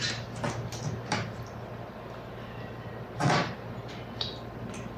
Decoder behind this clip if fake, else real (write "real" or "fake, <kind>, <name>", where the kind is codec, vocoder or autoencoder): real